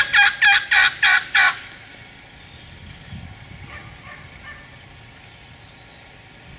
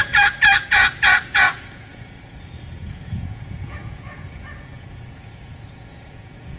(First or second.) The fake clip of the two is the second